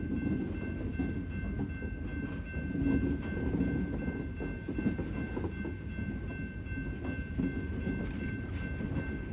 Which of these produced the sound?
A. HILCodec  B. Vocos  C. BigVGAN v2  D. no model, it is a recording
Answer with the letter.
D